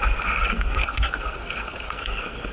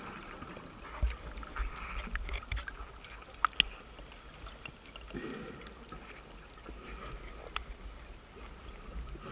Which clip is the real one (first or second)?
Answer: second